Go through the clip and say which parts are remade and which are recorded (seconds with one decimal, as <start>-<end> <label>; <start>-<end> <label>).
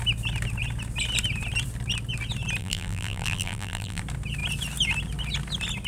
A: 0.0-2.6 recorded; 2.6-4.0 remade; 4.0-5.9 recorded